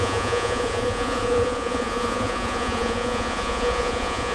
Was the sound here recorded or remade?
remade